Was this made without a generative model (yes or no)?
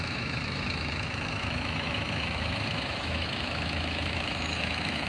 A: no